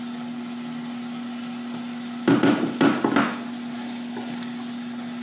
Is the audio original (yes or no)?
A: yes